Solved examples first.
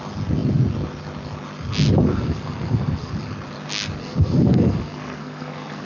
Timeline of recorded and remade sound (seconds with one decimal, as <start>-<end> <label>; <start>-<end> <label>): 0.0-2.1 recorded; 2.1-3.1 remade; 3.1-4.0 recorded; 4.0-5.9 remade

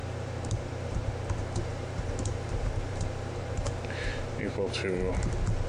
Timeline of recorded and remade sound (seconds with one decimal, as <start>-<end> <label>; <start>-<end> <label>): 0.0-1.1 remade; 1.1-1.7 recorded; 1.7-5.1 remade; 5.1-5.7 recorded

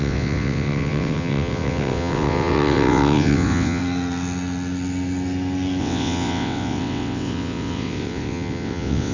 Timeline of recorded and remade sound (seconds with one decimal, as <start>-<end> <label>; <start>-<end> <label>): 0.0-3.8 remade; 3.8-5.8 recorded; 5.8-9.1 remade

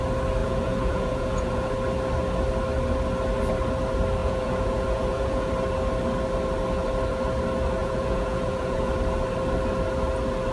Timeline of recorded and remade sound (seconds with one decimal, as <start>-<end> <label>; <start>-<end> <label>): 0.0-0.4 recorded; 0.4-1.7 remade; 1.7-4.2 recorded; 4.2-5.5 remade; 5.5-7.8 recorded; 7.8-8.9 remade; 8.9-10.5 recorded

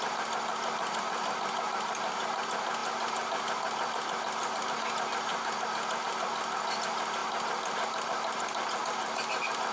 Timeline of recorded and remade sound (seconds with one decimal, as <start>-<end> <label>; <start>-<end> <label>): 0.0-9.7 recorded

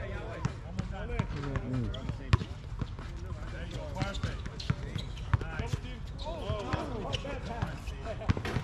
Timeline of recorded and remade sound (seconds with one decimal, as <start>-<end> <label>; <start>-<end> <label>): 0.0-8.6 recorded